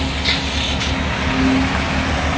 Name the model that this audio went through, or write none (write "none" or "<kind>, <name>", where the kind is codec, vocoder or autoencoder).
none